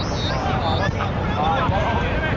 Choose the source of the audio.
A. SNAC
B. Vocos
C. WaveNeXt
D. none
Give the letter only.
D